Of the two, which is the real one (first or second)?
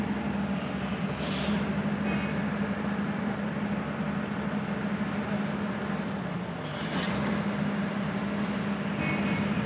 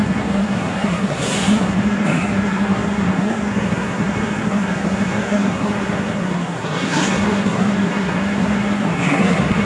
first